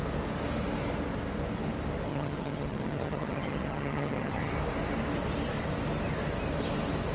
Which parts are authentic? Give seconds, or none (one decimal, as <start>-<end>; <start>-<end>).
0.0-2.1; 4.5-7.1